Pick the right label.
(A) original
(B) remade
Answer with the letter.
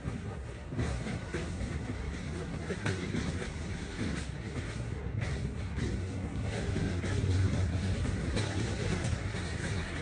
B